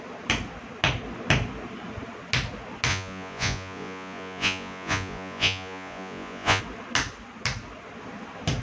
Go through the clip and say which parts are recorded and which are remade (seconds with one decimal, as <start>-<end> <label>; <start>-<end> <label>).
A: 0.0-2.9 recorded; 2.9-6.6 remade; 6.6-8.6 recorded